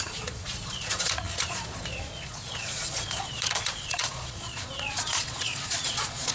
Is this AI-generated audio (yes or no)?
yes